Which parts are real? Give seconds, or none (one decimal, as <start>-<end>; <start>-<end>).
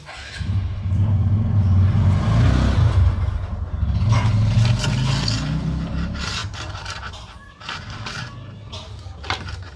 0.0-6.4; 8.1-9.8